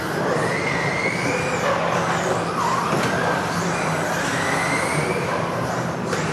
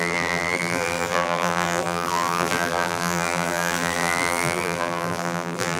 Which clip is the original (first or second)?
first